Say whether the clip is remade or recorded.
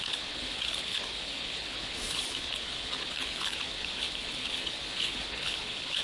remade